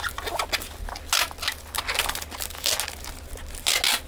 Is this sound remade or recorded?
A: recorded